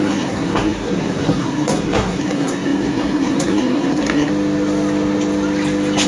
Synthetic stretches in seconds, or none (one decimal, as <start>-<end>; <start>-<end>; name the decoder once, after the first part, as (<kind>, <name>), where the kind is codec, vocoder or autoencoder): 0.0-4.3 (codec, SNAC)